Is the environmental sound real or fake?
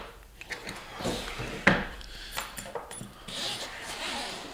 fake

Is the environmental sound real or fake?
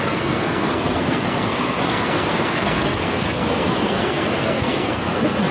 fake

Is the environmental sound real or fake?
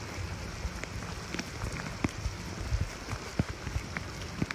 real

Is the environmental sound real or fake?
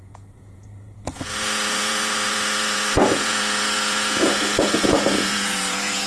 fake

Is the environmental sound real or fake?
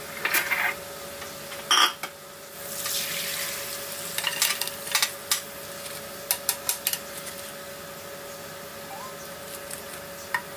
real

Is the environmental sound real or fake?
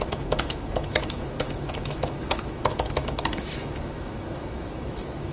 fake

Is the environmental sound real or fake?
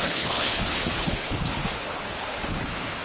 fake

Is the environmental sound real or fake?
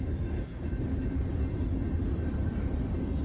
real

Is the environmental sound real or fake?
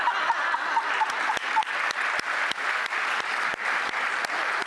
real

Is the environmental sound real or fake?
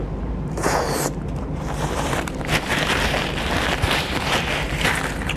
fake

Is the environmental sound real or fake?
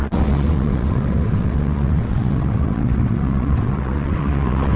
fake